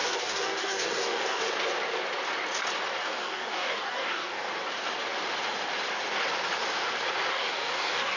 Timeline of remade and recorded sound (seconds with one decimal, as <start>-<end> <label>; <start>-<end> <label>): 0.0-1.4 remade; 1.4-3.0 recorded; 3.0-4.5 remade; 4.5-7.3 recorded; 7.3-8.2 remade